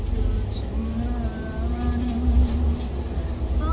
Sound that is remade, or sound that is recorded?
recorded